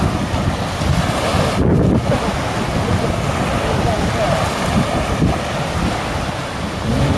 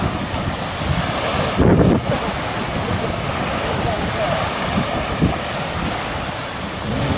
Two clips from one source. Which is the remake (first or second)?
second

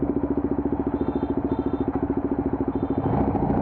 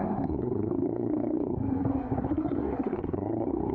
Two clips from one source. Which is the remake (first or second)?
second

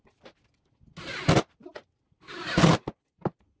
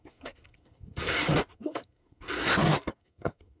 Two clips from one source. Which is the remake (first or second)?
second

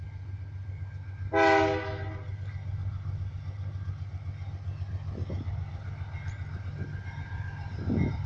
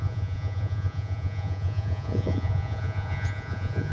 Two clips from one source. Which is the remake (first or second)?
second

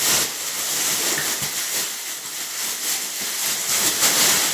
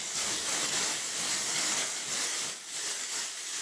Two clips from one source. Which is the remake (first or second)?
second